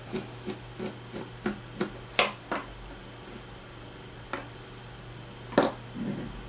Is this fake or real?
real